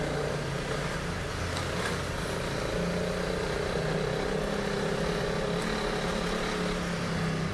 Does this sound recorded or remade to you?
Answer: recorded